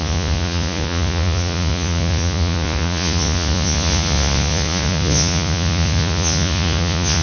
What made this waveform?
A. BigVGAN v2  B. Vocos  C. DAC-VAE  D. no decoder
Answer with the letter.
B